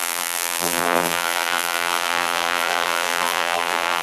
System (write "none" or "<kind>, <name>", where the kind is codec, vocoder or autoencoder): vocoder, BigVGAN v2